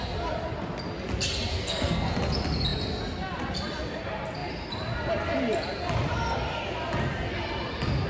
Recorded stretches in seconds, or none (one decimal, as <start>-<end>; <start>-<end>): 0.0-1.5; 2.2-8.1